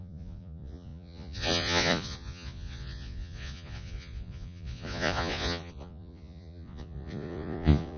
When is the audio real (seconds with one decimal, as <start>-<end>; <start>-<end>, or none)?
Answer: none